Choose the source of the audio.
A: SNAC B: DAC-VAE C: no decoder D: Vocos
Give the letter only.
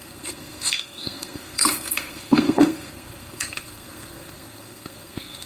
A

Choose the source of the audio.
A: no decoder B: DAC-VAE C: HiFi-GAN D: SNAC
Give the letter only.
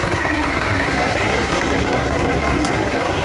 D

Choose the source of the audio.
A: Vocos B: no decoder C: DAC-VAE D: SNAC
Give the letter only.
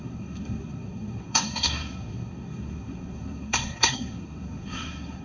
D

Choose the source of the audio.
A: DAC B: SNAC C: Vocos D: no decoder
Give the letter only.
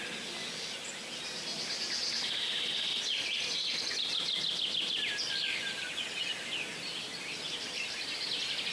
D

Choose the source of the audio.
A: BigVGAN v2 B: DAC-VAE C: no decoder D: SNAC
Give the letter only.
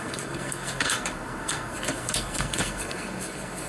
D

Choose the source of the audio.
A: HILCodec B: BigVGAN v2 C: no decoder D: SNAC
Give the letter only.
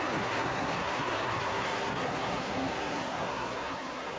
D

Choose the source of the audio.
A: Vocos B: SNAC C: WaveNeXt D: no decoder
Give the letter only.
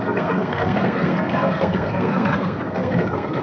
B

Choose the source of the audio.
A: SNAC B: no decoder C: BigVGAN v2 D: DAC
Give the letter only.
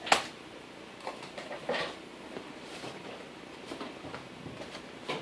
B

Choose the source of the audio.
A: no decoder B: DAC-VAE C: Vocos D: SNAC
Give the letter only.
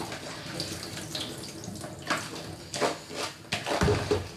A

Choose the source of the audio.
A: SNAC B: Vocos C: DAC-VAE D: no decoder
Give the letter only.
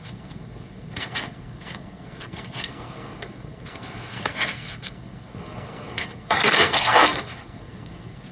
A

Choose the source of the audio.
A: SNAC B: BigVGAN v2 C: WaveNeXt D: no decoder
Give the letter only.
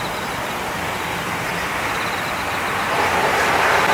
D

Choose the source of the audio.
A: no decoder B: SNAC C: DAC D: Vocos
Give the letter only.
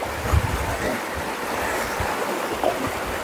A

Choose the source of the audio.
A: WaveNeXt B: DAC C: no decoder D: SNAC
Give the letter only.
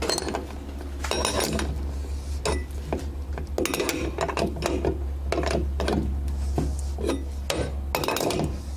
C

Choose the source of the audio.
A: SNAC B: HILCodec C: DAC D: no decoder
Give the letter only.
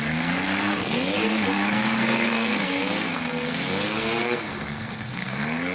A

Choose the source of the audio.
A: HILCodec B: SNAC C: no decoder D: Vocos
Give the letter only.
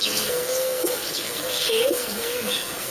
B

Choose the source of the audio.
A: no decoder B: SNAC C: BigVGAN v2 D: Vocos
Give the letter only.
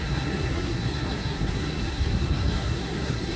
B